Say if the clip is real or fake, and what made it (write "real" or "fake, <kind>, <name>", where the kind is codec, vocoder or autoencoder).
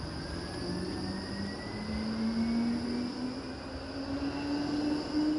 real